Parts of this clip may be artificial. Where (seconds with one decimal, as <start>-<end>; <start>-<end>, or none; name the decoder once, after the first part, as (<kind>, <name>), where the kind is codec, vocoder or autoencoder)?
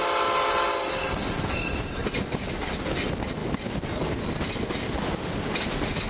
none